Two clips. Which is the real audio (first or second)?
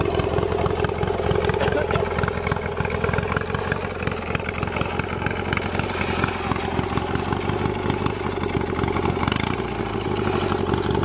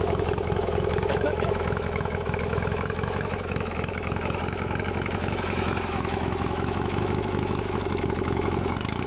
first